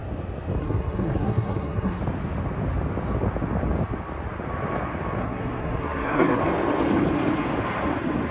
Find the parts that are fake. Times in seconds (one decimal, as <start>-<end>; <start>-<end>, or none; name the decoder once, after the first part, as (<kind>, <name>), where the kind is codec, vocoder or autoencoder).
0.6-2.0 (codec, SNAC); 5.2-6.4